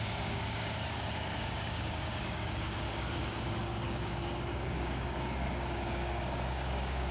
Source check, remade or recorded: remade